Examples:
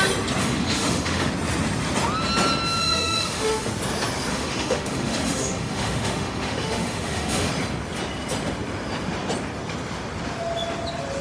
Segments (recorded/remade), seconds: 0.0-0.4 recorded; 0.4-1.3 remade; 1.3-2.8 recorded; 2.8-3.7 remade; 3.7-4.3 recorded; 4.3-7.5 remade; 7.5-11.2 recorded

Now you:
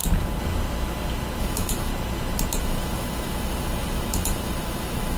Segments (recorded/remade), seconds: 0.0-1.4 recorded; 1.4-1.9 remade; 1.9-2.6 recorded; 2.6-5.2 remade

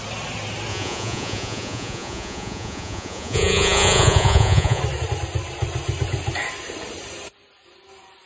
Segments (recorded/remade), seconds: 0.0-0.7 recorded; 0.7-4.8 remade; 4.8-8.3 recorded